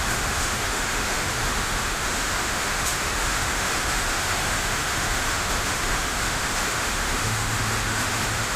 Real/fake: fake